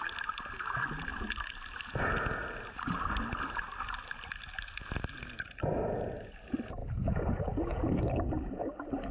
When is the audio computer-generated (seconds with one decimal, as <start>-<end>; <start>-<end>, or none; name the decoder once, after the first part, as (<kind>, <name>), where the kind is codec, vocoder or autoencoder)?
6.8-8.0 (vocoder, Vocos)